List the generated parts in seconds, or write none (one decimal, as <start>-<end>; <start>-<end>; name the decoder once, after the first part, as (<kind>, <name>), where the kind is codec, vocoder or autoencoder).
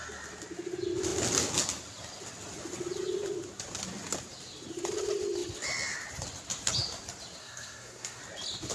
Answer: 7.4-8.2 (codec, SNAC)